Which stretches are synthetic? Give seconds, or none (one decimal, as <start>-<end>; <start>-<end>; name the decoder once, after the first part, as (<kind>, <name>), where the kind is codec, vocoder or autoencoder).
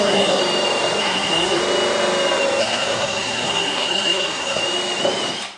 0.0-0.4 (codec, SNAC); 1.0-1.6; 2.6-4.6